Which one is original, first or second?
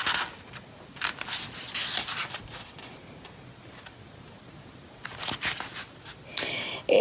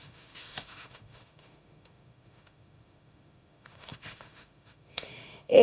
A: first